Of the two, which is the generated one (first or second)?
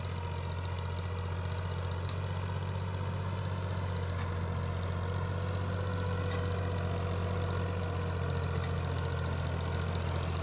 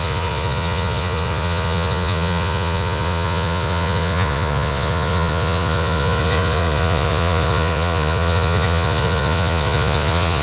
second